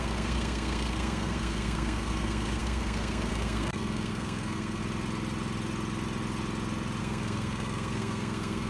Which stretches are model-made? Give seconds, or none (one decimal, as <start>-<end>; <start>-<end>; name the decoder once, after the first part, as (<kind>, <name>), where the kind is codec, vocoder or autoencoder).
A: 0.0-4.8 (codec, SNAC); 7.0-8.7